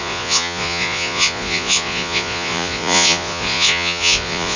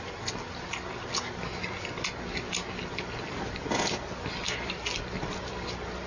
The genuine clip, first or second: second